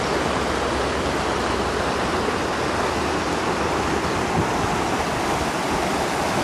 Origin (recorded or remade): recorded